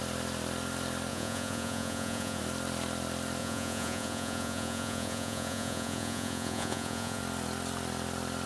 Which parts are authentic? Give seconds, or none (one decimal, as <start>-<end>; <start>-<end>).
0.0-1.1; 2.4-3.4; 7.2-8.5